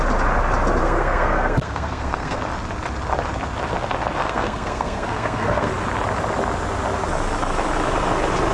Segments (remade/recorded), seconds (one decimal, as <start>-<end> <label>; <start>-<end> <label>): 0.0-0.8 recorded; 0.8-2.4 remade; 2.4-4.2 recorded; 4.2-5.7 remade; 5.7-8.5 recorded